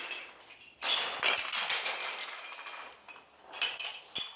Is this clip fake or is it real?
real